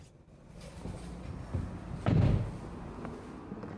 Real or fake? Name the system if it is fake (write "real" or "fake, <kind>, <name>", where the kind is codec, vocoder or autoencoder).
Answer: real